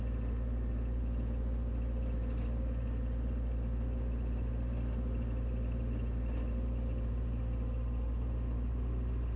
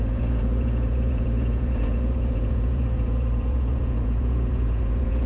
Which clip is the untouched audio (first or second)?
first